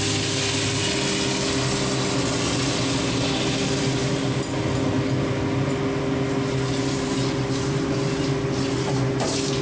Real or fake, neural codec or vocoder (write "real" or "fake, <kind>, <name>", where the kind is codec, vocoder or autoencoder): real